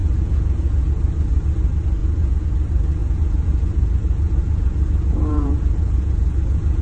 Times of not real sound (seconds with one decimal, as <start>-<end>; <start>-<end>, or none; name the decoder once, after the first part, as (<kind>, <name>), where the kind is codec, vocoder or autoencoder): 0.0-0.9 (vocoder, Vocos); 2.0-2.5; 3.0-6.8